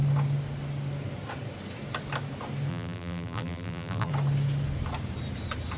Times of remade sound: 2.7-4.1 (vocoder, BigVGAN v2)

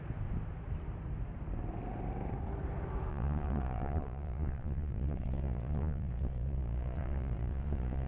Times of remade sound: 3.1-8.1 (vocoder, Vocos)